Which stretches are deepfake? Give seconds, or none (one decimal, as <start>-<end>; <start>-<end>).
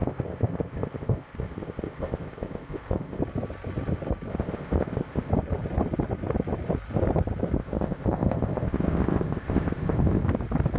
0.0-3.2; 4.3-5.3; 7.6-10.2